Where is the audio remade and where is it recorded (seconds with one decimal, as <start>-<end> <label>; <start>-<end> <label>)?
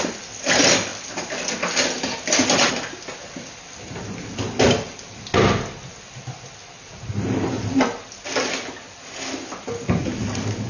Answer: 0.0-10.7 recorded